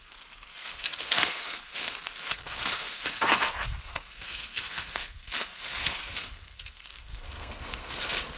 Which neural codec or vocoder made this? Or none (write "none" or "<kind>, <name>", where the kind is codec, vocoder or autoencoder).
codec, SNAC